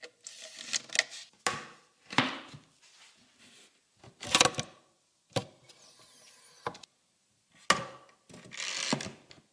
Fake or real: real